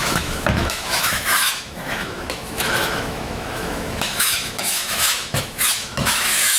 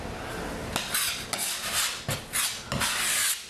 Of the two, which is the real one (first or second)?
second